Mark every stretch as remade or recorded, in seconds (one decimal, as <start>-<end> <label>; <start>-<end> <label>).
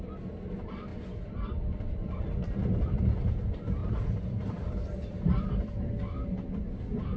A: 0.0-0.9 recorded; 0.9-3.2 remade; 3.2-3.8 recorded; 3.8-5.7 remade; 5.7-7.2 recorded